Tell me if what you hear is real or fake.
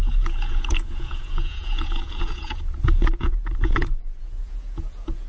fake